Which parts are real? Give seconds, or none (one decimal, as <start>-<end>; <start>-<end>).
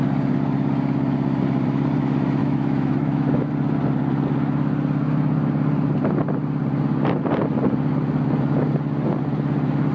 0.0-2.4; 3.5-9.9